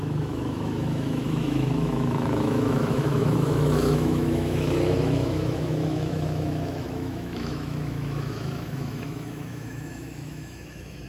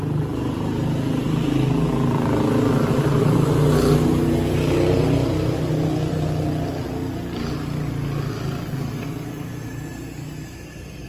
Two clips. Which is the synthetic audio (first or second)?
first